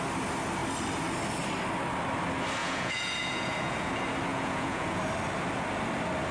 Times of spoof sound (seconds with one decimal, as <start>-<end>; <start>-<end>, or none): 2.6-3.9; 4.3-5.0